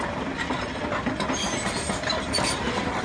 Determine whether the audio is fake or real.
real